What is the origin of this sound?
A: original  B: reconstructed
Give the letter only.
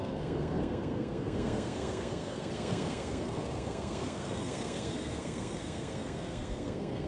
B